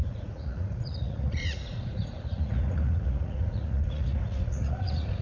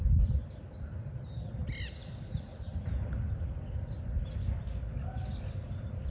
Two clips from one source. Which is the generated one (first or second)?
first